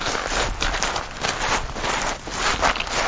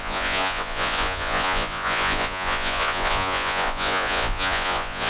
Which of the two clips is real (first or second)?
first